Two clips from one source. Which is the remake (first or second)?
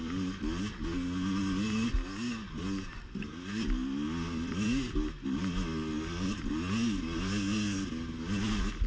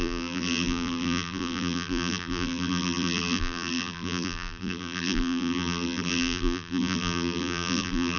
second